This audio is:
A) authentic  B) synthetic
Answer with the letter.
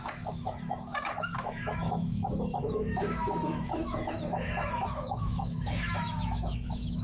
B